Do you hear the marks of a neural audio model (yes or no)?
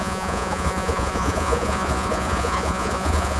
yes